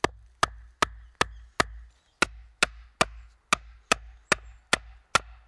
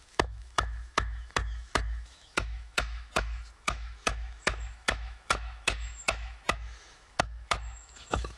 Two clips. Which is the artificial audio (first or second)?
second